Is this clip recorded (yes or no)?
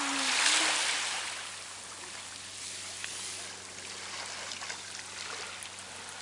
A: yes